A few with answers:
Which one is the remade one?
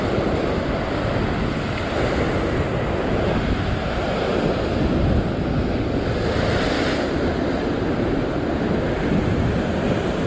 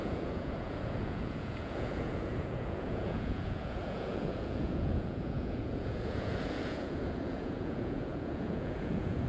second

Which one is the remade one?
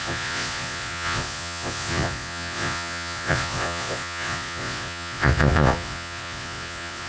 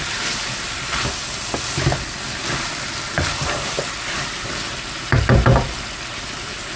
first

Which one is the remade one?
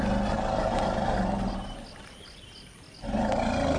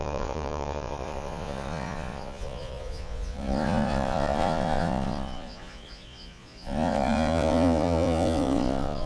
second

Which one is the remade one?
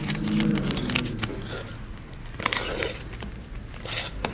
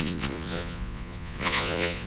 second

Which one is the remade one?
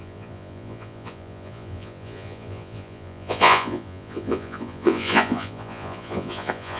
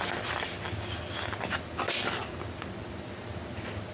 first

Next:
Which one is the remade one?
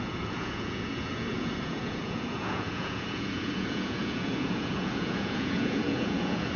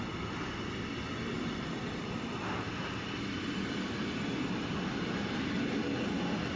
first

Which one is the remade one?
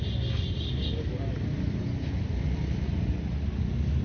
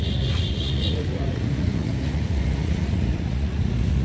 second